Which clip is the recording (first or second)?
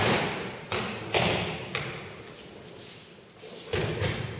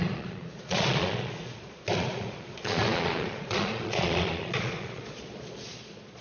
first